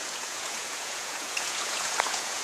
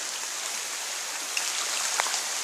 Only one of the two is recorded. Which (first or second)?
second